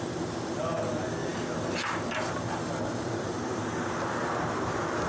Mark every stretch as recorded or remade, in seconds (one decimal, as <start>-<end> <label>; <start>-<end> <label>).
0.0-5.1 recorded